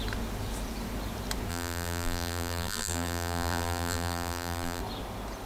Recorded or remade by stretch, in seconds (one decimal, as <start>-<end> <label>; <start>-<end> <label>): 0.0-1.5 recorded; 1.5-4.8 remade; 4.8-5.5 recorded